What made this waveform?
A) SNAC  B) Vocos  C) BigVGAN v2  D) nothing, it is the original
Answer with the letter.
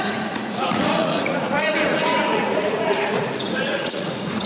B